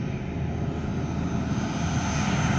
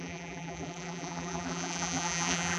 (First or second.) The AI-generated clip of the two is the second